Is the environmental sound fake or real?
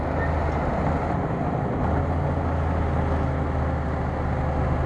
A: real